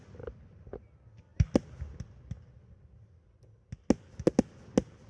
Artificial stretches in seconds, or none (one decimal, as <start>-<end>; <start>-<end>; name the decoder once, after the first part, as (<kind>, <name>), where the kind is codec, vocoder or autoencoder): none